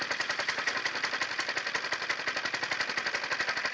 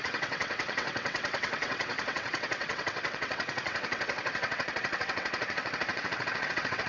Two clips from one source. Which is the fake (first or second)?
second